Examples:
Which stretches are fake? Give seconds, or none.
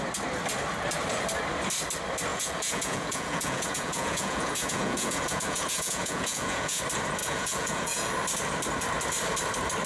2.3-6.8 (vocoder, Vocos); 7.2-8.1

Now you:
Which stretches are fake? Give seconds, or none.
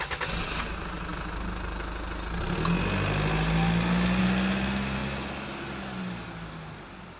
none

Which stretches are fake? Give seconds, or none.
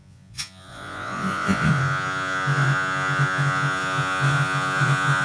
0.0-5.2 (vocoder, Vocos)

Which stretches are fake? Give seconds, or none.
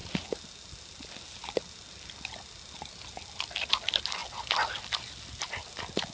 none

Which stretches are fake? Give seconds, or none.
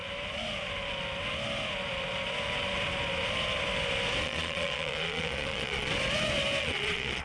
4.2-5.9 (vocoder, Vocos); 6.6-7.2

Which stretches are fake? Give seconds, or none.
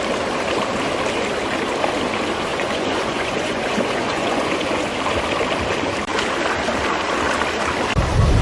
2.5-4.9 (vocoder, Vocos)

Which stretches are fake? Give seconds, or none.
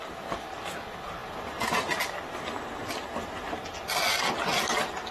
none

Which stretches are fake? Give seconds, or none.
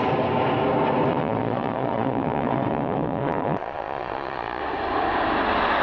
1.1-4.6 (vocoder, Vocos)